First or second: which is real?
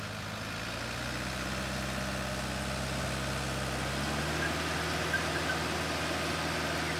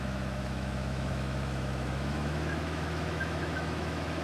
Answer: first